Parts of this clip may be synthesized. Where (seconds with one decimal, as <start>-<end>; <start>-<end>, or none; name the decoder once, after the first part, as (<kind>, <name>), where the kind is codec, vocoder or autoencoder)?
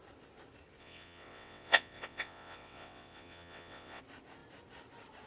0.8-4.0 (vocoder, WaveNeXt)